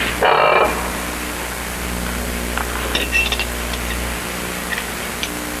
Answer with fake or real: real